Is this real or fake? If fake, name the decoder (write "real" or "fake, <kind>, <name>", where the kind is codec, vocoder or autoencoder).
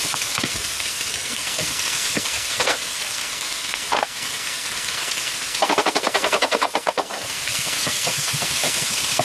fake, codec, SNAC